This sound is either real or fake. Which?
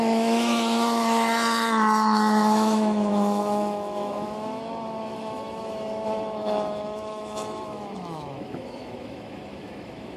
fake